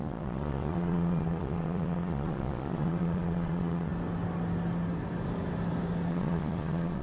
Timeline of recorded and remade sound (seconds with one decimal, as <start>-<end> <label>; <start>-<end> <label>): 0.0-3.9 remade; 3.9-6.1 recorded; 6.1-7.0 remade